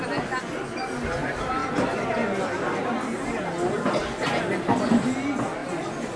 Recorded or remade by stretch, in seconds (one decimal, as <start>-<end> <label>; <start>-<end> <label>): 0.0-6.2 recorded